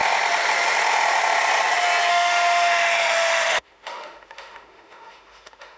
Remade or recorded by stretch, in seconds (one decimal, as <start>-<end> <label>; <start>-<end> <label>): 0.0-2.1 recorded; 2.1-5.8 remade